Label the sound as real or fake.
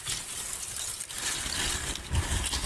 real